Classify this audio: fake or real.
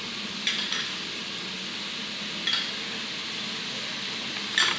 real